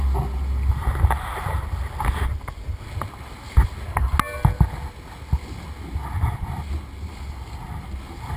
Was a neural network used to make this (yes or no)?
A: no